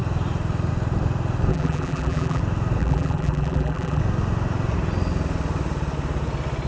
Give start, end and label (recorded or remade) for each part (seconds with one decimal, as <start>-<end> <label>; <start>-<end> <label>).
0.0-1.5 recorded; 1.5-2.4 remade; 2.4-2.8 recorded; 2.8-4.0 remade; 4.0-6.7 recorded